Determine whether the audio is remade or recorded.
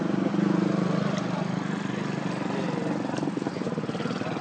recorded